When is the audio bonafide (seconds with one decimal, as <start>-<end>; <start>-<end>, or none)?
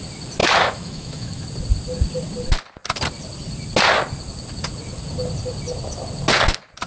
0.0-0.4; 1.4-6.9